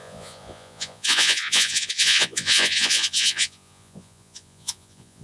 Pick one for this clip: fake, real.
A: fake